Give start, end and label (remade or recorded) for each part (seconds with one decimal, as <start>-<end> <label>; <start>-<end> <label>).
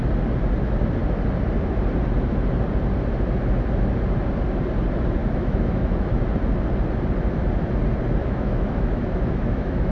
0.0-5.2 recorded; 5.2-6.2 remade; 6.2-8.2 recorded; 8.2-9.9 remade